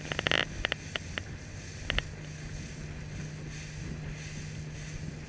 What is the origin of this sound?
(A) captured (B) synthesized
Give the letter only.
A